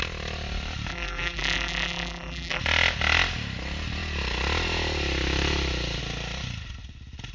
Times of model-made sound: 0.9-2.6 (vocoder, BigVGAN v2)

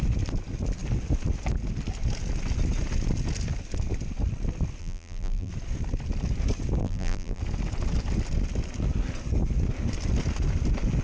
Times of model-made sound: 4.8-5.5 (vocoder, BigVGAN v2); 6.8-7.4

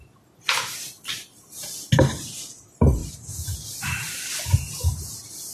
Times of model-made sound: 3.0-4.2 (vocoder, BigVGAN v2)

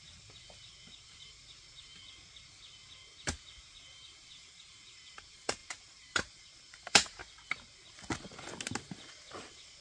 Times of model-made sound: 0.0-1.9 (vocoder, BigVGAN v2); 4.3-7.2; 9.1-9.8

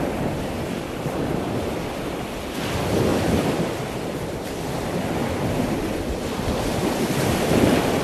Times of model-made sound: 3.1-4.7 (vocoder, BigVGAN v2)

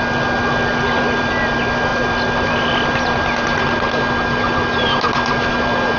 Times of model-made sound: none

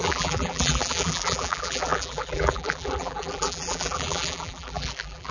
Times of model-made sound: 0.0-5.3 (vocoder, BigVGAN v2)

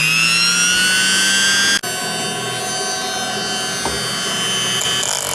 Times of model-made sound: none